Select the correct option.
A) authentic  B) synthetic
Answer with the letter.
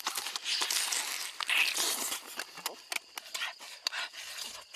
A